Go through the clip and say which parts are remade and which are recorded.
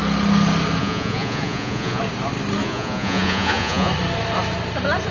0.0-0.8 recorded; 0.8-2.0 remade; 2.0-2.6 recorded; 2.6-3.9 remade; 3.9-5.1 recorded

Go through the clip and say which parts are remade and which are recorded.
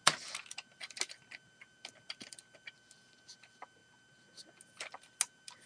0.0-5.7 recorded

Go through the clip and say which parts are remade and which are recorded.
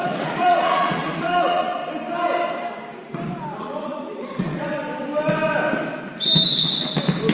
0.0-1.8 remade; 1.8-3.6 recorded; 3.6-4.8 remade; 4.8-7.3 recorded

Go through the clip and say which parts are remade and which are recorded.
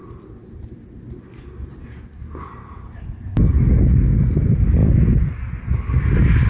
0.0-6.5 recorded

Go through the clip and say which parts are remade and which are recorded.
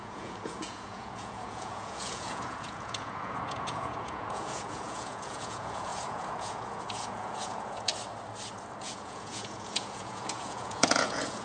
0.0-7.9 remade; 7.9-8.8 recorded; 8.8-11.4 remade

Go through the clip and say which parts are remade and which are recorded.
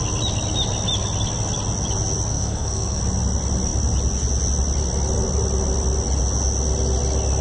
0.0-2.3 recorded; 2.3-3.0 remade; 3.0-7.4 recorded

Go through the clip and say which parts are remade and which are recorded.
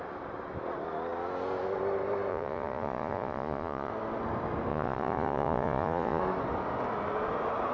0.0-2.3 recorded; 2.3-3.9 remade; 3.9-4.7 recorded; 4.7-6.2 remade; 6.2-7.7 recorded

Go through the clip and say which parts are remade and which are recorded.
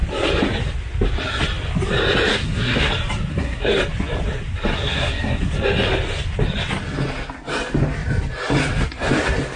0.0-2.3 recorded; 2.3-2.9 remade; 2.9-3.3 recorded; 3.3-3.8 remade; 3.8-4.7 recorded; 4.7-5.5 remade; 5.5-9.6 recorded